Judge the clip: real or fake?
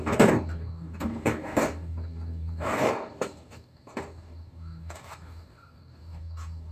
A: fake